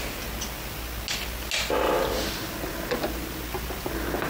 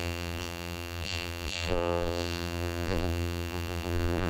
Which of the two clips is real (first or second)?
first